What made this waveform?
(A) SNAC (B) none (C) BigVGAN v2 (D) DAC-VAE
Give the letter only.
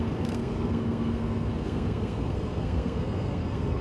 A